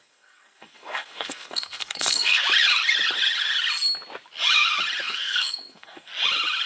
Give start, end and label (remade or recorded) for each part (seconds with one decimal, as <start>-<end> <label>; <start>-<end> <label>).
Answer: 0.0-2.4 remade; 2.4-5.0 recorded; 5.0-6.1 remade; 6.1-6.7 recorded